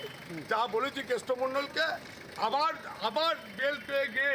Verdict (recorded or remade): recorded